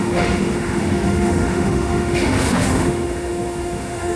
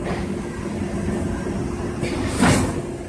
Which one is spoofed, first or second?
first